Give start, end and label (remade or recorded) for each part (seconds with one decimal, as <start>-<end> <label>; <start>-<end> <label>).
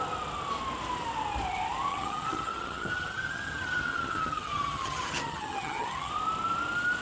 0.0-1.9 recorded; 1.9-6.1 remade; 6.1-7.0 recorded